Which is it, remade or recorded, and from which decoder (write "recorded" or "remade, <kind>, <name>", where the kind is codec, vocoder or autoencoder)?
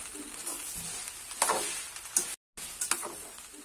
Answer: recorded